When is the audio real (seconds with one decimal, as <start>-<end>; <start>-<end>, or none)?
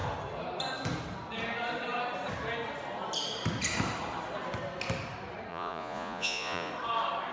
0.0-5.5; 6.7-7.3